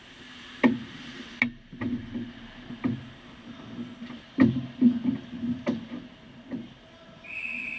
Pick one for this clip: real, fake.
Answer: real